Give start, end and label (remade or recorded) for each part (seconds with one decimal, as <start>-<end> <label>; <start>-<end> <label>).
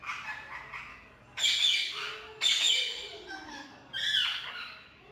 0.0-0.9 recorded; 0.9-3.9 remade; 3.9-4.3 recorded; 4.3-5.1 remade